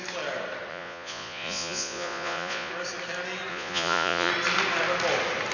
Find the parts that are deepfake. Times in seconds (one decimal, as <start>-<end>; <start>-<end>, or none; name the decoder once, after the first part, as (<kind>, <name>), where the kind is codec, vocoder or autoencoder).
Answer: 0.7-2.7 (vocoder, Vocos); 3.5-4.3